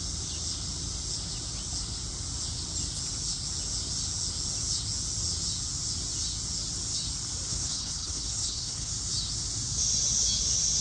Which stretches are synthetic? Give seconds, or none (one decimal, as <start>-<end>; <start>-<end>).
7.5-8.9